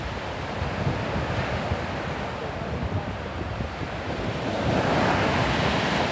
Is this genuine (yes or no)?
yes